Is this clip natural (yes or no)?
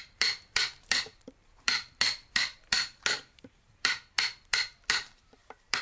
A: no